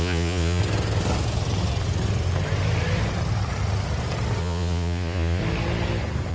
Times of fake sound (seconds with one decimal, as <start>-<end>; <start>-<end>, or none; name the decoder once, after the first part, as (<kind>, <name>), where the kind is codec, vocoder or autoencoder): 0.0-0.6 (vocoder, Vocos); 4.4-5.4

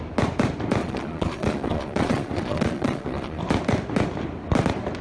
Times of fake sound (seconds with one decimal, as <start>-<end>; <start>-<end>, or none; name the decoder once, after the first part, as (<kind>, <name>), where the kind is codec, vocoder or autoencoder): 0.8-3.4 (vocoder, Vocos)

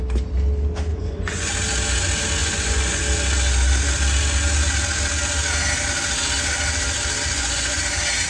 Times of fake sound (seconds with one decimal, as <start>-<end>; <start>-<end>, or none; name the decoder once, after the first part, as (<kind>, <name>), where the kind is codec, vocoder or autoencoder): 0.9-1.5 (vocoder, Vocos); 2.4-3.0; 7.3-7.8

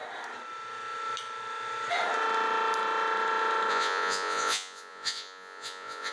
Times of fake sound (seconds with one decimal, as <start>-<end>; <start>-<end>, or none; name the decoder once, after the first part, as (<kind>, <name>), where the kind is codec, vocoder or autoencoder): 3.7-6.1 (vocoder, Vocos)

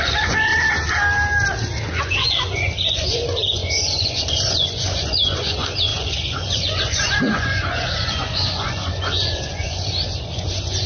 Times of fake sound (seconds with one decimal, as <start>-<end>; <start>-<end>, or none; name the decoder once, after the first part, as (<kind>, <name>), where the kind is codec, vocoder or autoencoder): 0.0-0.5 (vocoder, Vocos); 2.0-10.9

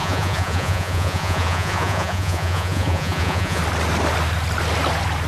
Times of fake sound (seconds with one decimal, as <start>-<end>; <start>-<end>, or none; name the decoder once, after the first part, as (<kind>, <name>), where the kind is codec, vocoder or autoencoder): 0.0-3.6 (vocoder, Vocos)

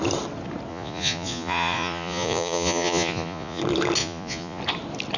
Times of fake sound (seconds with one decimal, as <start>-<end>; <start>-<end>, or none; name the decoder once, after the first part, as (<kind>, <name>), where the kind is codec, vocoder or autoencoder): 0.7-3.6 (vocoder, Vocos); 4.0-4.6